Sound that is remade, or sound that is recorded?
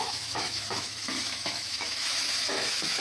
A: remade